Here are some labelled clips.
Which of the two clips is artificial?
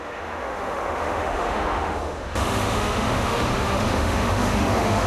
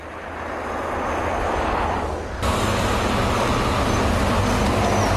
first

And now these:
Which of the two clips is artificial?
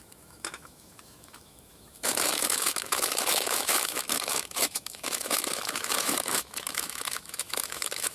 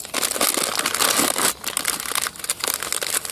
first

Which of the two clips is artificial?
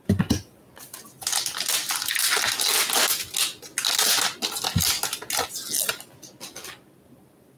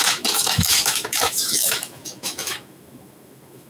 second